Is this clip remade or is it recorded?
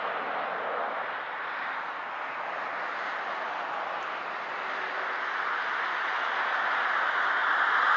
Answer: recorded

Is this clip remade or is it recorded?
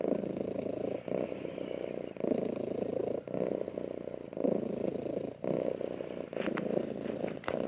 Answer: recorded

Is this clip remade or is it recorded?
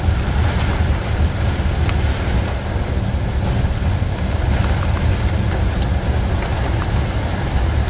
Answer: recorded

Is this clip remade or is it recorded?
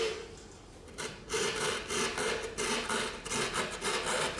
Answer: recorded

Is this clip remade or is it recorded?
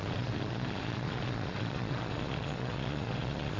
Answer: remade